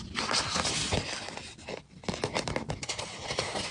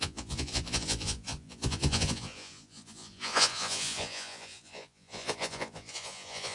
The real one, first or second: first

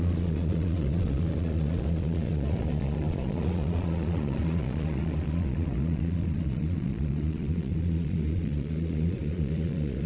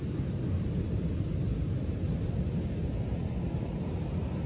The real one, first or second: second